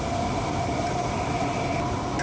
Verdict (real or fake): real